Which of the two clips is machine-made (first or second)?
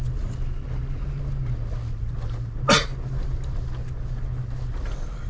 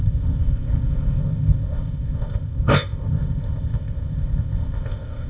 second